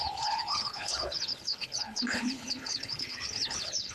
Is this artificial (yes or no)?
yes